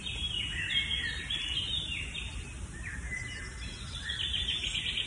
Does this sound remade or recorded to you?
recorded